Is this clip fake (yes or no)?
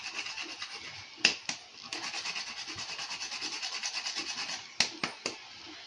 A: no